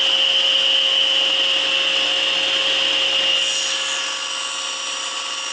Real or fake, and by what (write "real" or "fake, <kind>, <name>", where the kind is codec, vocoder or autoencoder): real